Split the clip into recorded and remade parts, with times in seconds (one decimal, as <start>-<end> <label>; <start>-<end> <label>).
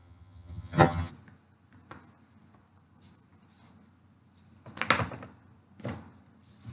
0.0-1.1 remade; 1.1-6.7 recorded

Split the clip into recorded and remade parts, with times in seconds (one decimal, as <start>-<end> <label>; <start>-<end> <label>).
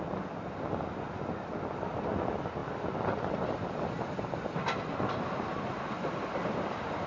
0.0-7.1 recorded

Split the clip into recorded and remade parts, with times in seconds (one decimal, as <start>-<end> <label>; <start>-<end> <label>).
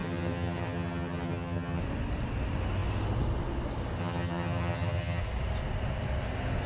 0.0-1.8 remade; 1.8-4.0 recorded; 4.0-5.2 remade; 5.2-6.7 recorded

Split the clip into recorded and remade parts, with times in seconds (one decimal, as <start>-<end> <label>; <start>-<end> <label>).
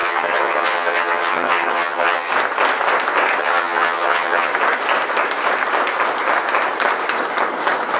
0.0-2.3 remade; 2.3-3.4 recorded; 3.4-4.5 remade; 4.5-8.0 recorded